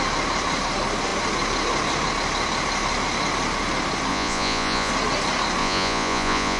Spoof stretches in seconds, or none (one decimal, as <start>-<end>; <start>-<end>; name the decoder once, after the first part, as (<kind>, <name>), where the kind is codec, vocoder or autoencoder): 4.1-4.9 (vocoder, Vocos); 5.6-6.6